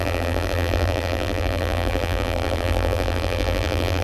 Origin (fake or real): fake